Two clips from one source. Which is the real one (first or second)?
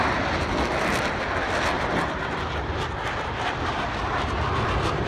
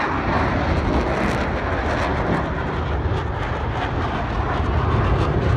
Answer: second